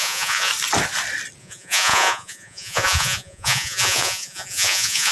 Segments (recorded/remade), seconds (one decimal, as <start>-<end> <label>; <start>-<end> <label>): 0.0-0.5 remade; 0.5-1.4 recorded; 1.4-5.1 remade